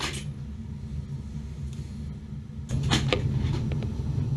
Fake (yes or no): no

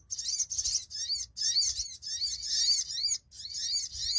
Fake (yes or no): no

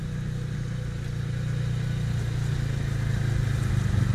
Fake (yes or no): no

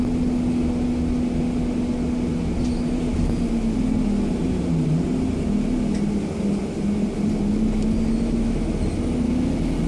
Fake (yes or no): no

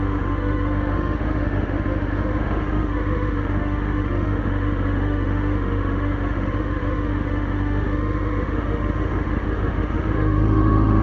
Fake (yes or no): yes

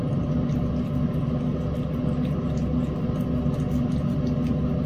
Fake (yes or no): no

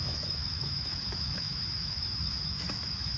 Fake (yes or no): yes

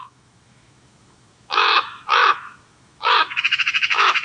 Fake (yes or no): yes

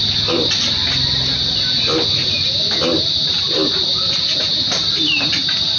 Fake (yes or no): no